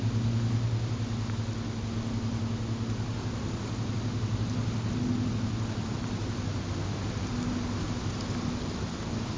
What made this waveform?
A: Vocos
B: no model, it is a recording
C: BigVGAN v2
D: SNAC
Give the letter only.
B